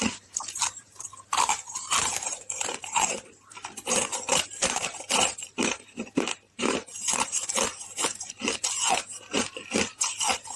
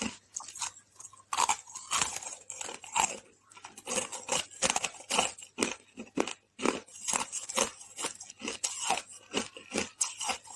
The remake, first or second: first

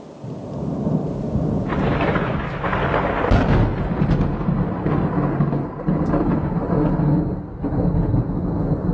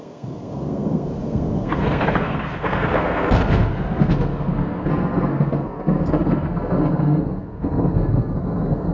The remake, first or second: second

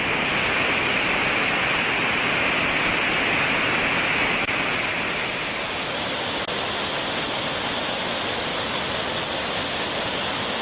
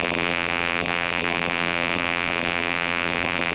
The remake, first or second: second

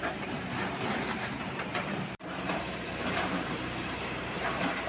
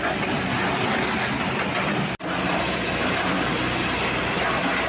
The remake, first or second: first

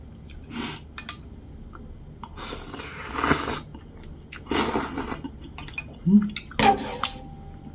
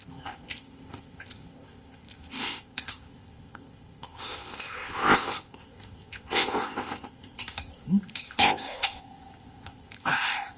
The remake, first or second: second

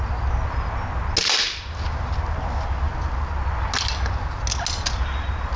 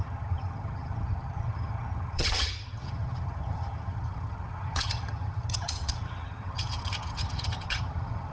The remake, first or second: second